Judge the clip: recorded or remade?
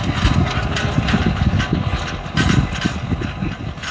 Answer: recorded